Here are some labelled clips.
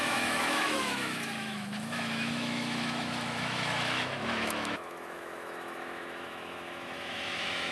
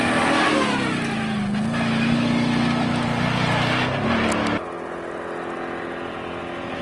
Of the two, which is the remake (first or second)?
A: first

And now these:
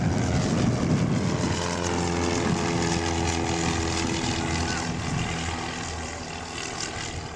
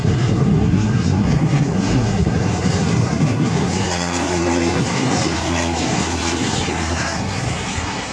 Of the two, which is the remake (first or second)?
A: second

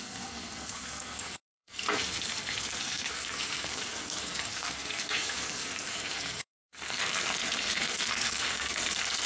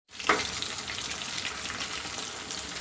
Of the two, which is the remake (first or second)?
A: first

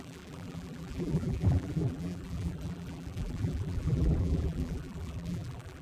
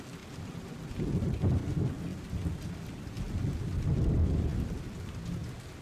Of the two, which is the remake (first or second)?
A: first